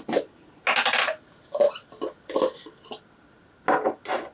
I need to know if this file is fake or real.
real